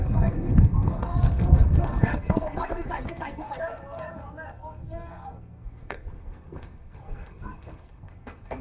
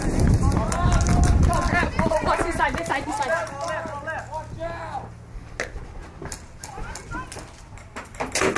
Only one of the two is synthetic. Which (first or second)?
first